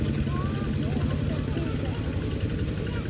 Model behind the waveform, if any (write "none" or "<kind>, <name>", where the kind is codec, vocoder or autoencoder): none